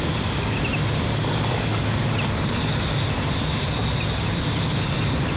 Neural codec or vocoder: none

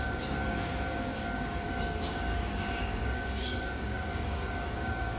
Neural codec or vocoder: codec, DAC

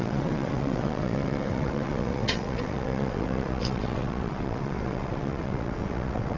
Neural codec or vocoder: vocoder, WaveNeXt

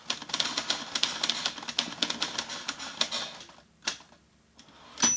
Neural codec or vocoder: none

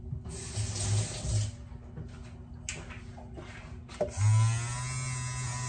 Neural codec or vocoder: none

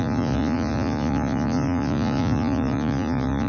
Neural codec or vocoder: vocoder, Vocos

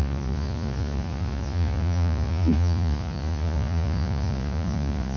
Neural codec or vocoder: vocoder, Vocos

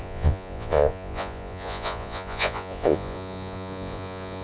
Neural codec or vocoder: vocoder, Vocos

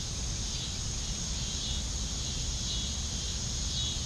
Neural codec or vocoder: none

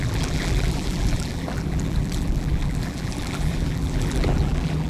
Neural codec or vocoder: vocoder, BigVGAN v2